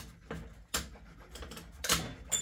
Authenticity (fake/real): real